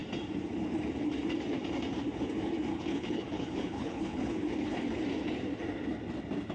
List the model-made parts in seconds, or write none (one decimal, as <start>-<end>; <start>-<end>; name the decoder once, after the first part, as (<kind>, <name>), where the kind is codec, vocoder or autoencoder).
2.7-5.0 (codec, HILCodec)